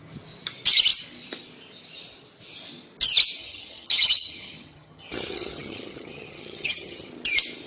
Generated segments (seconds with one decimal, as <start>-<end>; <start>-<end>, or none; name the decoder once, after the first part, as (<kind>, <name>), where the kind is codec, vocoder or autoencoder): 3.4-7.1 (vocoder, HiFi-GAN)